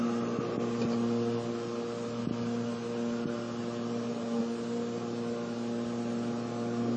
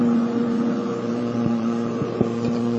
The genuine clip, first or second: first